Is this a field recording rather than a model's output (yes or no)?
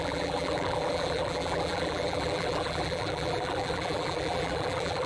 no